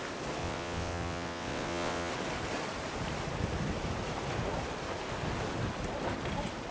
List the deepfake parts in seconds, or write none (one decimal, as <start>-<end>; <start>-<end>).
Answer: 0.4-2.1